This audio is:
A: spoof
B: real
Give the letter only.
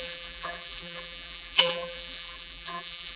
A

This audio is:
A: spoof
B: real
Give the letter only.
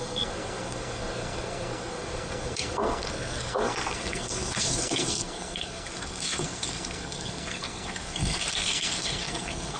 A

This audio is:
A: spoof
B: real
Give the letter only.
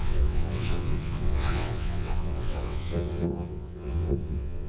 A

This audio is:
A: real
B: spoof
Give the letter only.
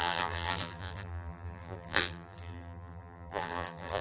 B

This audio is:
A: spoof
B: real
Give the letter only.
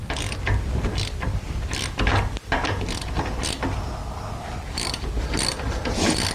B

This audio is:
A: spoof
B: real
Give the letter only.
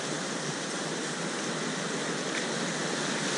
B